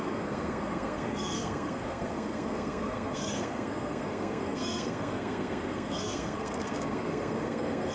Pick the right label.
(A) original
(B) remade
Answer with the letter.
B